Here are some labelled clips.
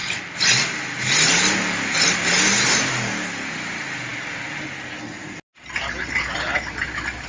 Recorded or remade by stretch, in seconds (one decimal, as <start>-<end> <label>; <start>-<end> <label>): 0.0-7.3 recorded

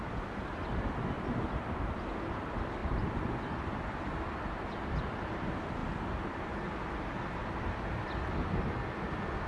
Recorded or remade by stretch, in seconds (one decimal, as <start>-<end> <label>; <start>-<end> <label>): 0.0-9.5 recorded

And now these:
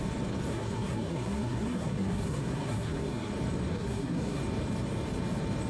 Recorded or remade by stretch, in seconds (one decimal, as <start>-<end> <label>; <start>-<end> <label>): 0.0-0.5 recorded; 0.5-3.3 remade; 3.3-3.7 recorded; 3.7-4.4 remade; 4.4-5.7 recorded

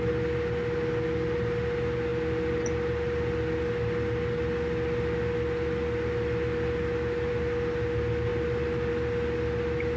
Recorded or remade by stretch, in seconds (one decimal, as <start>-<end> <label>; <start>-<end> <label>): 0.0-10.0 recorded